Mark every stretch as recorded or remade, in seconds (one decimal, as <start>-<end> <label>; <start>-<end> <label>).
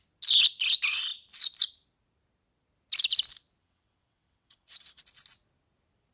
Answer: 0.0-3.6 recorded; 3.6-5.0 remade; 5.0-6.1 recorded